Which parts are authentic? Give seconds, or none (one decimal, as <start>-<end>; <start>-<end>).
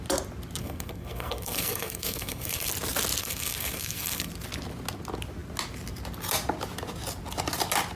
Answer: 0.0-0.6; 2.7-3.2; 4.3-8.0